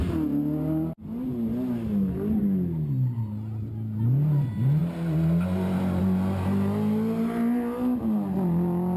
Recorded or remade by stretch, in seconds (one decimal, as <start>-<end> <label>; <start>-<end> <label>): 0.0-9.0 recorded